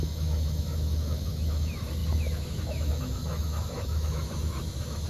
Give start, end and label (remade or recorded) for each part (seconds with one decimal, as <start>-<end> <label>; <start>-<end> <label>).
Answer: 0.0-5.1 remade